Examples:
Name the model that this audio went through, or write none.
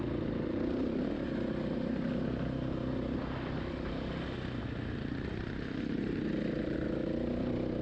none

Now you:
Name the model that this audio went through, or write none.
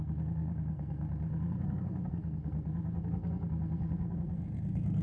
codec, SNAC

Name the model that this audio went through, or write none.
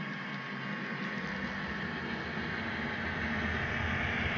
none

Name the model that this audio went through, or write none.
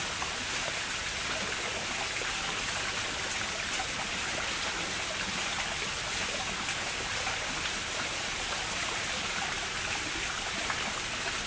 none